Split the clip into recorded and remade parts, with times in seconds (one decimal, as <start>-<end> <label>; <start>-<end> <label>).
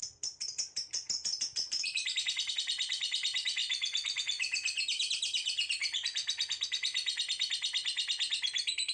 0.0-6.2 remade; 6.2-8.9 recorded